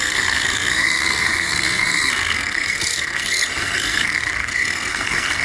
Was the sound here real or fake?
fake